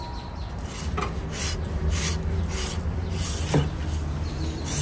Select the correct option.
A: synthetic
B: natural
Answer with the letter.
B